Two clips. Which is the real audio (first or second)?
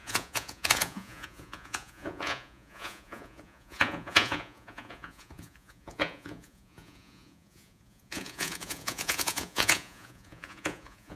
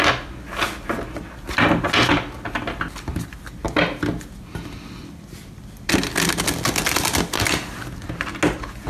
second